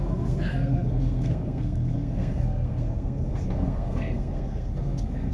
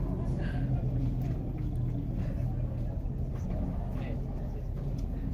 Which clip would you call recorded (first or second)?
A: second